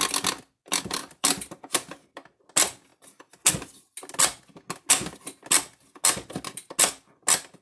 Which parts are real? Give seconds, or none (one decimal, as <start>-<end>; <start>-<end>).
0.0-1.0; 1.6-7.6